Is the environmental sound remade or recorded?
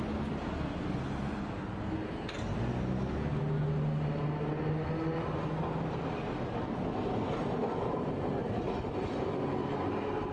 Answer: recorded